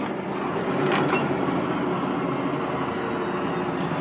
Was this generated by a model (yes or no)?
no